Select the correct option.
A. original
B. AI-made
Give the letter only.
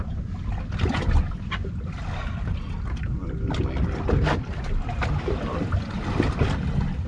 A